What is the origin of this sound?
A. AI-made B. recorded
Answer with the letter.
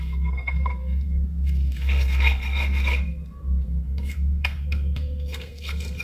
A